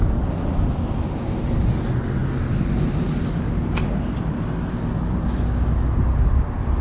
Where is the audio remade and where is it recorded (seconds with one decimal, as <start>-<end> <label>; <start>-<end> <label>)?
0.0-6.8 recorded